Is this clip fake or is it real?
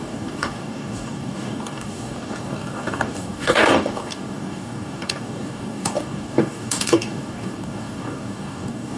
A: fake